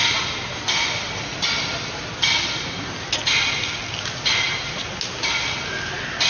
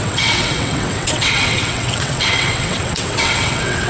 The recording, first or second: first